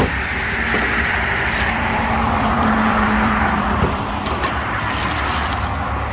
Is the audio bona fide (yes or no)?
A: no